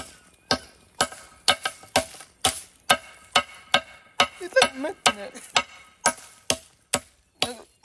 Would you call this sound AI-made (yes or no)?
no